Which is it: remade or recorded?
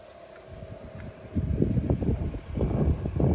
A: recorded